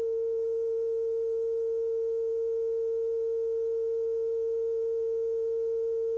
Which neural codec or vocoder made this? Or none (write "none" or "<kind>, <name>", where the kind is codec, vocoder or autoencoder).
none